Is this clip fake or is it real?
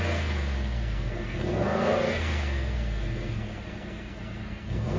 fake